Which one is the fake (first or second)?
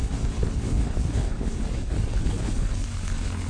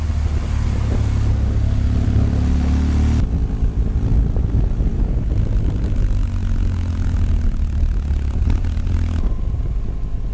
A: first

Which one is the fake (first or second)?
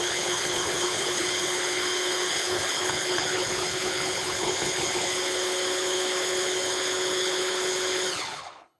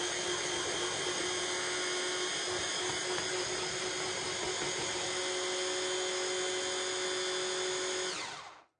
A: first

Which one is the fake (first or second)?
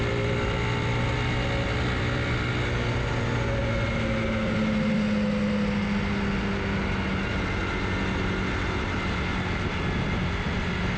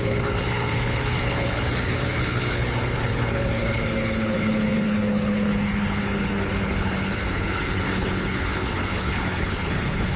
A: second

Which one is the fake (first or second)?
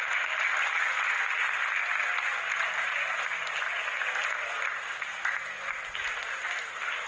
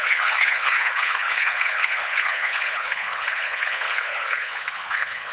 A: second